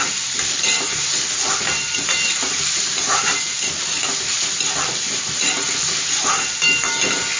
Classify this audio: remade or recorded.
remade